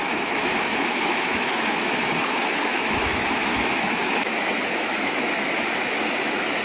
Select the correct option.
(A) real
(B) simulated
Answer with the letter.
B